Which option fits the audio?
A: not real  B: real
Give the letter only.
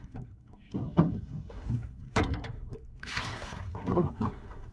A